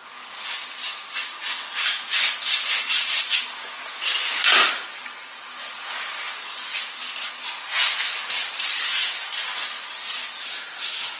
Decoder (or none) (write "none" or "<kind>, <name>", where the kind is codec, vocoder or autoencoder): none